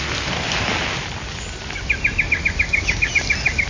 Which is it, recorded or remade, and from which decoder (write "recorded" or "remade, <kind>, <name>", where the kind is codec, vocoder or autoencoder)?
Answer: recorded